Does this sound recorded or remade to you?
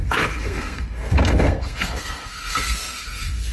remade